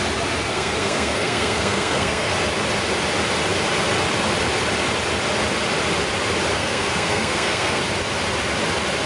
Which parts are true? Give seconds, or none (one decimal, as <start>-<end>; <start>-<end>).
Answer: 0.0-0.5; 2.3-6.5; 7.8-9.1